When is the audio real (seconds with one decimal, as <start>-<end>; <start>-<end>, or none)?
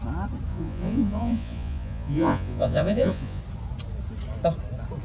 0.0-0.5; 3.4-5.0